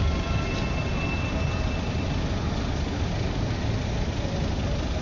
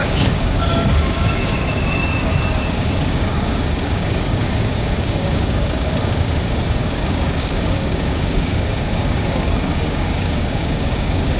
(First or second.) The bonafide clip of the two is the first